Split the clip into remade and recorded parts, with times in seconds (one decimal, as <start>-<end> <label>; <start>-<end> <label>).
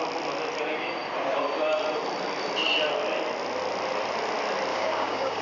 0.0-4.7 recorded; 4.7-5.4 remade